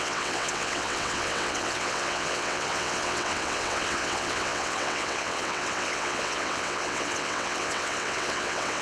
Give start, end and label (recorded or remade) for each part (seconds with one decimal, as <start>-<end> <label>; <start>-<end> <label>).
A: 0.0-8.8 remade